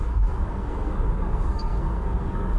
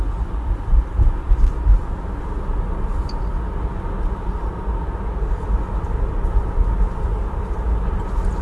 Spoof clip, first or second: first